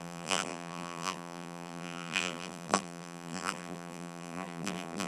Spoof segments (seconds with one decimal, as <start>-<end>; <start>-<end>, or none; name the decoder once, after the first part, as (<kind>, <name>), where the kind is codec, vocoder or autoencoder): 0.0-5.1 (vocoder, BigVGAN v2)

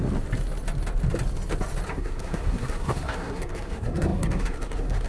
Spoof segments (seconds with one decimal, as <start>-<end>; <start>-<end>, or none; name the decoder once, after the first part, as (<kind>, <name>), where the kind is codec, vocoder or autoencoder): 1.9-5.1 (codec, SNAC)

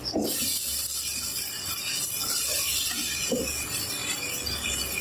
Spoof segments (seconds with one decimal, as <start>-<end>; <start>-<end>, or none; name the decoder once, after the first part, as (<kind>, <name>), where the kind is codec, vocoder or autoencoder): none